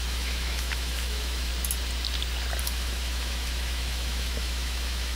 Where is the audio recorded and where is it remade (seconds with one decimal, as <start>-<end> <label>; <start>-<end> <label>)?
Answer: 0.0-1.5 remade; 1.5-2.6 recorded; 2.6-5.2 remade